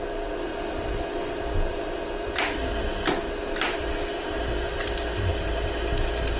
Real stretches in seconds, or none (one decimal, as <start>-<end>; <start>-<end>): 0.0-6.4